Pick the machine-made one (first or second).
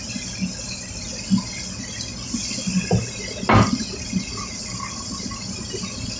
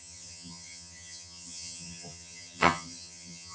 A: second